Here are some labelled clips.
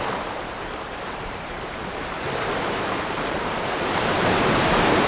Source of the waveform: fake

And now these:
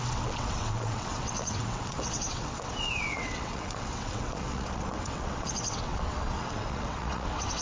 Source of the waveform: fake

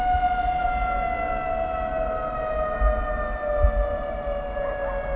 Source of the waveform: real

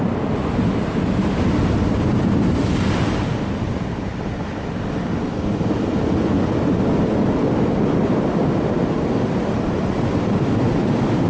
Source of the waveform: real